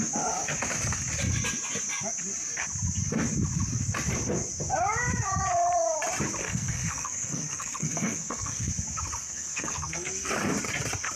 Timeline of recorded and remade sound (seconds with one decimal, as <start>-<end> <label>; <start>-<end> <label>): 0.0-6.4 recorded; 6.4-8.7 remade; 8.7-9.2 recorded; 9.2-10.3 remade; 10.3-11.2 recorded